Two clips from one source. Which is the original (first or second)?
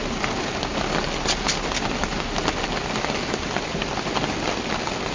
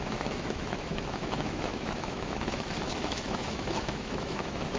first